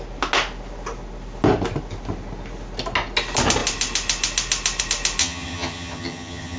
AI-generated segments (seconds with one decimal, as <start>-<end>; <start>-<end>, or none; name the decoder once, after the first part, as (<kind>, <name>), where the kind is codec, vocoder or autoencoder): 5.2-6.6 (vocoder, HiFi-GAN)

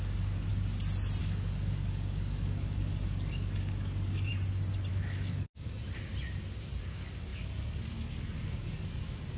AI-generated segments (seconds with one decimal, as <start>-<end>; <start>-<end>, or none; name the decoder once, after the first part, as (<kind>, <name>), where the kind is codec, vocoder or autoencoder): 0.0-0.5 (codec, DAC); 1.2-4.3; 4.9-5.8; 6.8-9.4

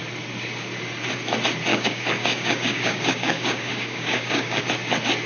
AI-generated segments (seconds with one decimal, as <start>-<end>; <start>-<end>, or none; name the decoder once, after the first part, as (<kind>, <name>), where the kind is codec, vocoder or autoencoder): 1.7-4.6 (codec, DAC)

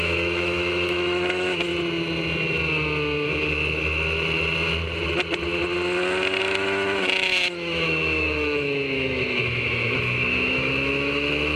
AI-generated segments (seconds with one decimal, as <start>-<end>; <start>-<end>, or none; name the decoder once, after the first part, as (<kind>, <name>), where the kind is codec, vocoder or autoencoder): 0.0-1.7 (autoencoder, DAC-VAE); 6.4-11.6

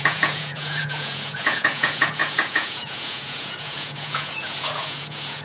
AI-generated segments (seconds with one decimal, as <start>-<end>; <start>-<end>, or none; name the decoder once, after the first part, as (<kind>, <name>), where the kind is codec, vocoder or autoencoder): 0.0-5.4 (vocoder, Vocos)

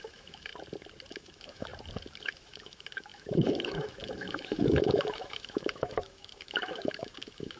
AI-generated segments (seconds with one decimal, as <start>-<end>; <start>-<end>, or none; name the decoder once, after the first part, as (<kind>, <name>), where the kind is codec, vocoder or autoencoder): 0.0-0.5 (autoencoder, DAC-VAE); 1.1-1.7; 2.2-7.6

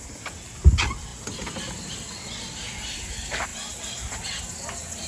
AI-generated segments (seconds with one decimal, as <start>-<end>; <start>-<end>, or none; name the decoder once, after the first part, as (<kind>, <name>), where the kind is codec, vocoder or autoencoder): none

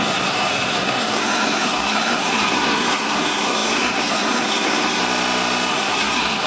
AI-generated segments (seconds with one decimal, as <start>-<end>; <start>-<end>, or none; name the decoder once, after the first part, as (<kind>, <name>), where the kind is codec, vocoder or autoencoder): 0.0-5.0 (codec, SNAC); 5.7-6.5